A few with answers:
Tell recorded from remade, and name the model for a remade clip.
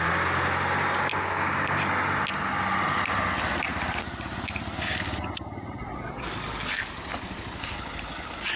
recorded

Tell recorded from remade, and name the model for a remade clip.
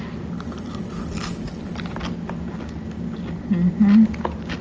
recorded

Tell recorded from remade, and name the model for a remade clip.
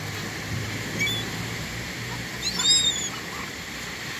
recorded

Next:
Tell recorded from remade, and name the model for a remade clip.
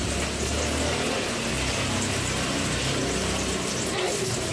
recorded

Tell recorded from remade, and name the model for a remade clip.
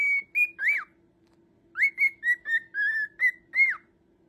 recorded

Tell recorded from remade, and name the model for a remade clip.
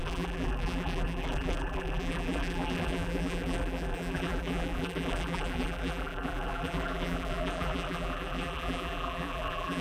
remade, vocoder, BigVGAN v2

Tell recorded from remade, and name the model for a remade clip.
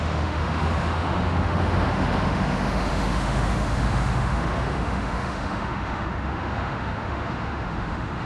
remade, autoencoder, DAC-VAE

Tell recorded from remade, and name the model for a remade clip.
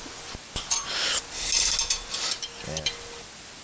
recorded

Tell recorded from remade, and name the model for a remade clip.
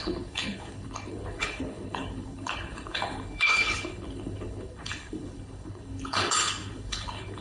remade, codec, HILCodec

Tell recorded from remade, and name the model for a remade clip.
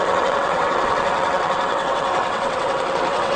remade, vocoder, WaveNeXt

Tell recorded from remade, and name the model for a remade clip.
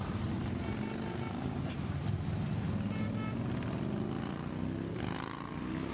recorded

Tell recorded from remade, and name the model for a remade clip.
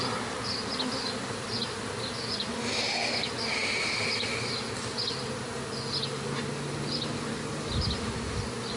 recorded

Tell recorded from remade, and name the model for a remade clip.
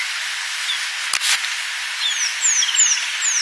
recorded